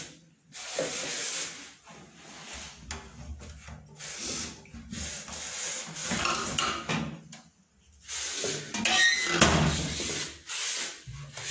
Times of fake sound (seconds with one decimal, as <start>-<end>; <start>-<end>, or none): none